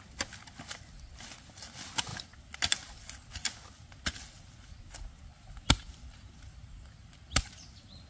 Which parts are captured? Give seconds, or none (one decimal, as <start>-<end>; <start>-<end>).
0.0-8.1